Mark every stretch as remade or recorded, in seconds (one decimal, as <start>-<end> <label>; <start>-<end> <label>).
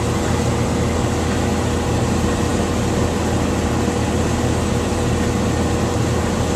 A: 0.0-6.6 recorded